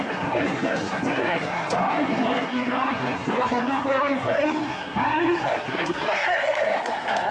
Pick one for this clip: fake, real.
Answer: fake